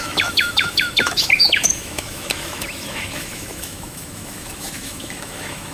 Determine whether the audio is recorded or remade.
remade